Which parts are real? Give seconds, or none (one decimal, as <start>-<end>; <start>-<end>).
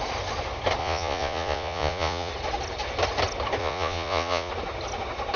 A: 0.0-0.8; 2.3-3.6; 4.5-5.4